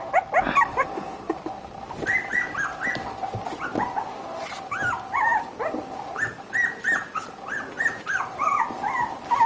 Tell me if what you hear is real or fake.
real